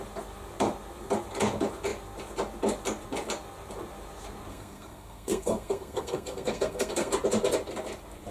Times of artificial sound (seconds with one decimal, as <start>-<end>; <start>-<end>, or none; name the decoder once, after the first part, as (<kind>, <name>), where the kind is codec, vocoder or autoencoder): 4.5-7.1 (codec, SNAC)